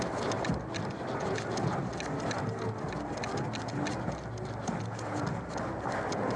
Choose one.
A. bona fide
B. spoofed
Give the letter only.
A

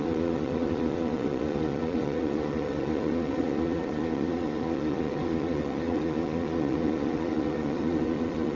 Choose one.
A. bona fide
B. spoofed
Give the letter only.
B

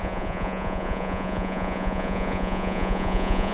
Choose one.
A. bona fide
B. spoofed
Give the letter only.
B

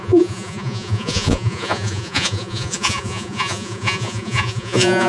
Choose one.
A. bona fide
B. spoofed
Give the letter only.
B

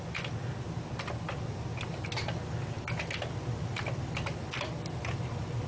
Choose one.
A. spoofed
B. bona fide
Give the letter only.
B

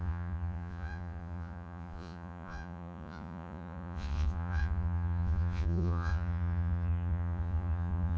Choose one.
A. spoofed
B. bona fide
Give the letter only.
A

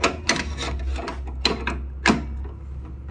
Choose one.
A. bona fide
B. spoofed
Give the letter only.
A